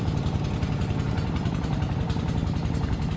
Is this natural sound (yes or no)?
no